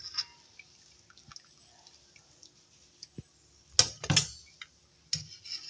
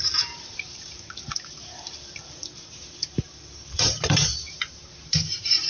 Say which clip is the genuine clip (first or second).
first